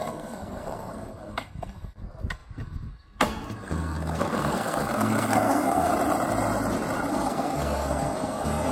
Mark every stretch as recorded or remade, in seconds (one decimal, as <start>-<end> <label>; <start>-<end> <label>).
0.0-5.9 remade; 5.9-7.1 recorded; 7.1-8.7 remade